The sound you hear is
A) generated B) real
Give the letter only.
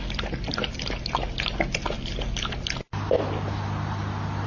B